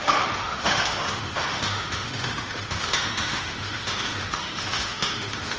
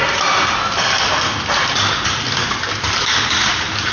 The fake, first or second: first